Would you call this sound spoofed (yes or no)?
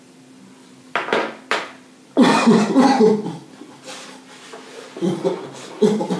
yes